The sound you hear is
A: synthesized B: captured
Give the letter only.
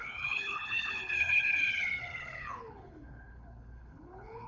A